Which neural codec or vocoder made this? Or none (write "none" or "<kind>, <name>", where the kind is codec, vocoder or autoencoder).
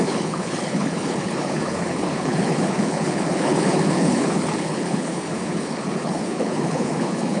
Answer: codec, HILCodec